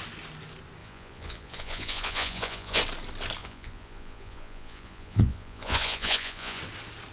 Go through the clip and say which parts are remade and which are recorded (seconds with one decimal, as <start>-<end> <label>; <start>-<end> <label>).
0.0-0.8 recorded; 0.8-2.8 remade; 2.8-3.4 recorded; 3.4-6.6 remade; 6.6-7.1 recorded